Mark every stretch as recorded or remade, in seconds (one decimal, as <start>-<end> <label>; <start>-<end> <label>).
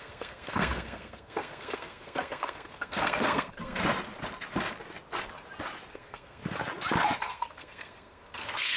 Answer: 0.0-3.8 remade; 3.8-5.9 recorded; 5.9-6.4 remade; 6.4-7.2 recorded; 7.2-8.8 remade